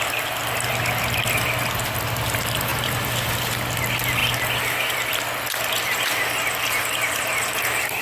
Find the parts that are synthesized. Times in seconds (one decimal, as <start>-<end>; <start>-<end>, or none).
none